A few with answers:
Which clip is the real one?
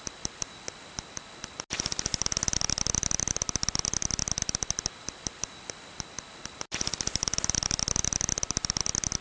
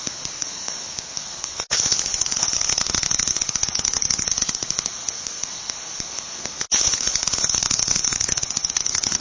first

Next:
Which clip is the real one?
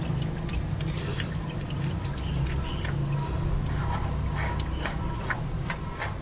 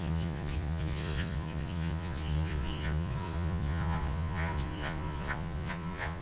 first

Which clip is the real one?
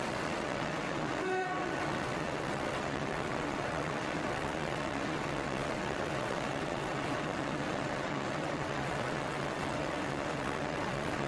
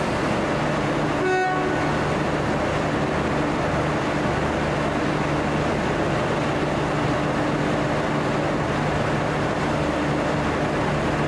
second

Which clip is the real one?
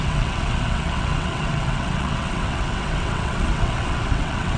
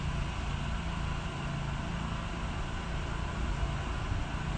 second